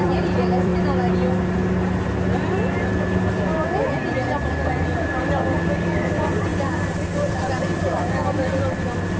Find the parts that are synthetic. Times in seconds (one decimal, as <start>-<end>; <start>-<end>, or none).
0.0-0.7; 5.8-6.5; 7.6-9.2